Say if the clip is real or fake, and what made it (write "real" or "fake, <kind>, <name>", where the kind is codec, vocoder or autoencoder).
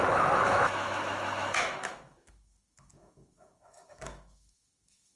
fake, autoencoder, DAC-VAE